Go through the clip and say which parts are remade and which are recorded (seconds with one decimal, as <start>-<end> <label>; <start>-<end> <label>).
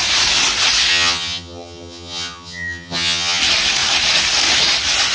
0.0-0.9 recorded; 0.9-3.4 remade; 3.4-5.1 recorded